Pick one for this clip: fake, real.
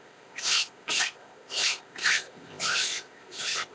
fake